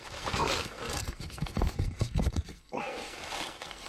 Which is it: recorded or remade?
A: remade